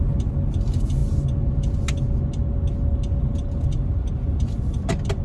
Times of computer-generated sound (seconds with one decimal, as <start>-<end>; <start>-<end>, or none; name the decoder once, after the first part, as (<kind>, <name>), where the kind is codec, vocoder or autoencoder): none